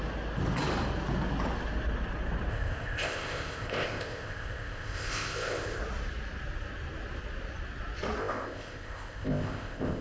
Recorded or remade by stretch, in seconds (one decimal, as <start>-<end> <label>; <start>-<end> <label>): 0.0-2.5 recorded; 2.5-5.8 remade; 5.8-8.2 recorded; 8.2-10.0 remade